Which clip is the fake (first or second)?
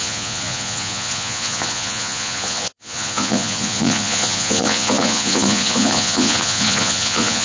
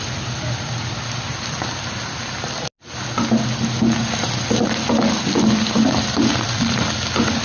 first